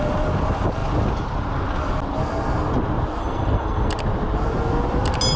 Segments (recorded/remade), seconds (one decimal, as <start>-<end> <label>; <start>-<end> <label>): 0.0-3.2 recorded; 3.2-3.9 remade; 3.9-5.4 recorded